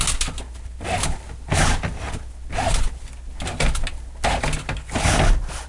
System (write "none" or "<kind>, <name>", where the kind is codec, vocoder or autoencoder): none